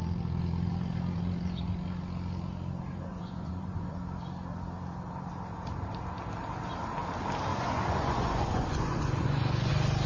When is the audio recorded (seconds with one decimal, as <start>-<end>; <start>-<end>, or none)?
0.0-3.1; 4.0-7.5; 9.7-10.1